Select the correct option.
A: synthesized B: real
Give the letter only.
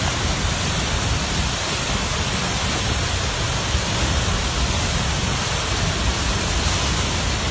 B